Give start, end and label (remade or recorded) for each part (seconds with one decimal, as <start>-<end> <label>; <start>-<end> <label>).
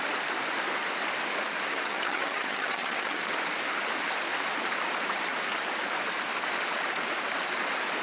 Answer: 0.0-1.7 recorded; 1.7-3.2 remade; 3.2-8.0 recorded